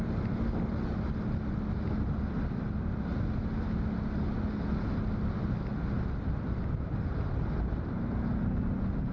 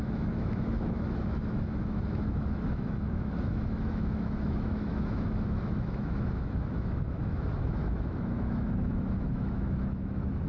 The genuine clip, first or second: first